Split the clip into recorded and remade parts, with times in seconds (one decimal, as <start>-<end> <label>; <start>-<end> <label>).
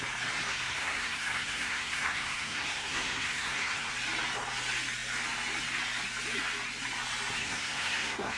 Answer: 0.0-0.5 recorded; 0.5-3.9 remade; 3.9-7.4 recorded; 7.4-8.4 remade